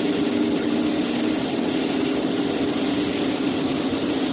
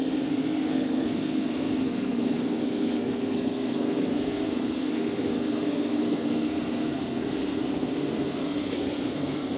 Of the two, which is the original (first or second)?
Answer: first